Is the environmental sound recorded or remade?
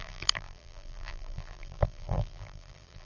remade